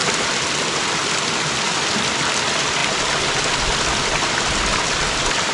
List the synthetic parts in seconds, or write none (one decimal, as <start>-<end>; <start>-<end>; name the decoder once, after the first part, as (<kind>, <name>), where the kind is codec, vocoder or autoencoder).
none

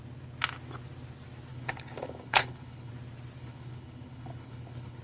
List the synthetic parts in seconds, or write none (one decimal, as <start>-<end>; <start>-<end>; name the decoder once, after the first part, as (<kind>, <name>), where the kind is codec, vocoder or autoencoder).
1.5-2.9 (codec, HILCodec); 3.4-5.0